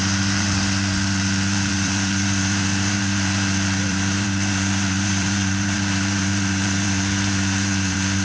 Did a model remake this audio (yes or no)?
yes